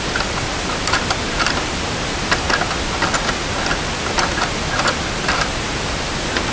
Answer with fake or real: real